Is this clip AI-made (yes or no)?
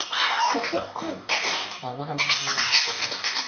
yes